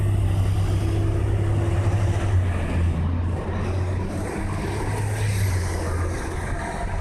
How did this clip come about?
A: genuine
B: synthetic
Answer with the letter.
A